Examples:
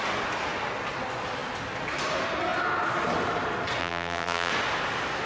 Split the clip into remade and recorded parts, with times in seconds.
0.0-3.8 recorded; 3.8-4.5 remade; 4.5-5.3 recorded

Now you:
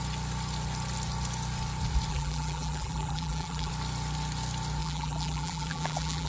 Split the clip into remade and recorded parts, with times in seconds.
0.0-2.1 recorded; 2.1-3.7 remade; 3.7-4.8 recorded; 4.8-6.3 remade

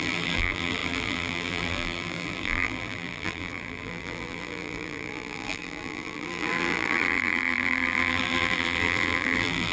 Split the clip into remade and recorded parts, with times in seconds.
0.0-9.7 remade

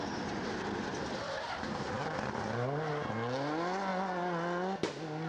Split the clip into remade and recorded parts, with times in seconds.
0.0-5.3 recorded